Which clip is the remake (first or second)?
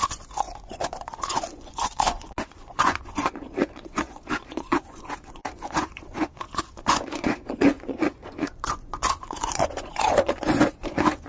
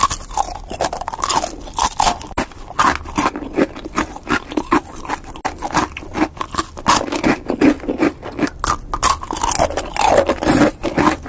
first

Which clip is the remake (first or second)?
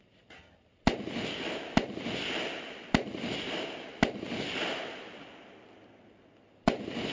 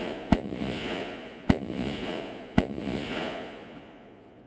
second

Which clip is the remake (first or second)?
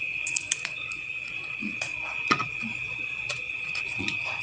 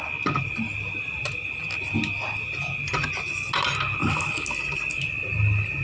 first